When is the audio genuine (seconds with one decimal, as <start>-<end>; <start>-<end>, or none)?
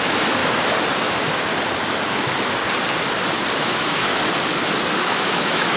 0.4-3.6; 4.1-5.0